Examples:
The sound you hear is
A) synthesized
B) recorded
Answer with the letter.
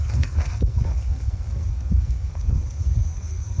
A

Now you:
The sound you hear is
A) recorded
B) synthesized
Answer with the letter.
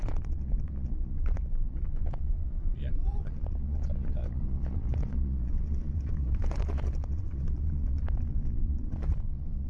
B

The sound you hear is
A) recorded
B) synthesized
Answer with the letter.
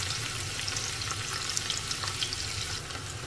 A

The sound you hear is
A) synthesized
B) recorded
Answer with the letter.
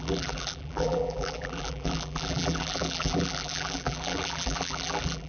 A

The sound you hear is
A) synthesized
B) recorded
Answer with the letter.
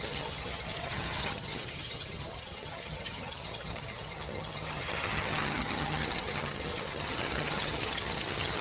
A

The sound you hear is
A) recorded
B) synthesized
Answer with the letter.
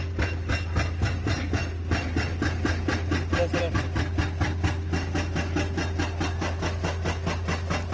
A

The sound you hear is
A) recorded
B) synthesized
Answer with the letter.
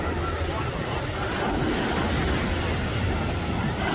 A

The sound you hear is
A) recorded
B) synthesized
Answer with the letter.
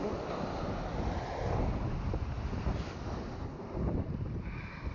A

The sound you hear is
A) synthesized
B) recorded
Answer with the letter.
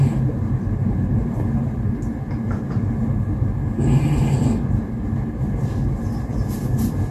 B